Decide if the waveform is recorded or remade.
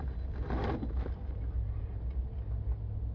recorded